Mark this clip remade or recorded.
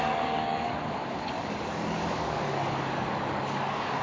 remade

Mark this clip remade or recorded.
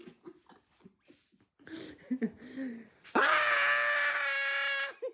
recorded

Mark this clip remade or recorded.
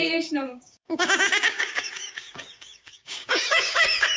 remade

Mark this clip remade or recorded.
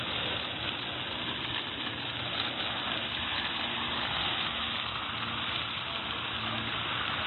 recorded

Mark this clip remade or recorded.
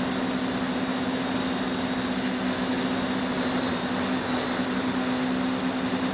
recorded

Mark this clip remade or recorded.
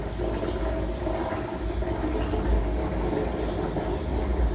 recorded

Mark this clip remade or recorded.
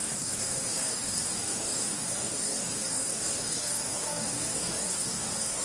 remade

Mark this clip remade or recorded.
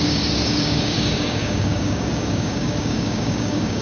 remade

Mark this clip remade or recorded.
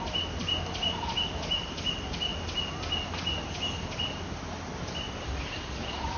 recorded